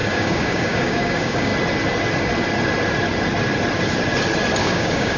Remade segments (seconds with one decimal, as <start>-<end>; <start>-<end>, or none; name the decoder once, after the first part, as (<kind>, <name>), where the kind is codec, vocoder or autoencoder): 0.0-1.5 (codec, DAC); 4.6-5.2